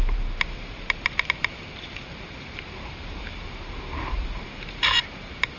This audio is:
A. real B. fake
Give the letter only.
B